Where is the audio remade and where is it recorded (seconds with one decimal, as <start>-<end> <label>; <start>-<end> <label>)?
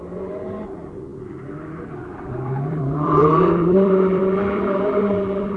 0.0-5.6 remade